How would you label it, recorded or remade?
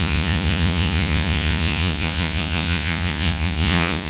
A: remade